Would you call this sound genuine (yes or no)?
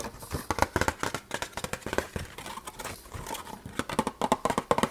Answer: yes